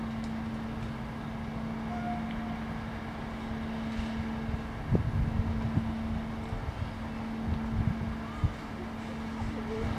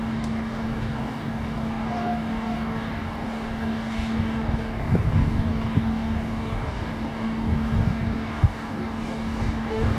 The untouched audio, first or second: first